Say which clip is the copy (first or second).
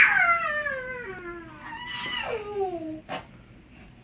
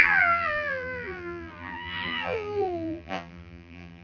second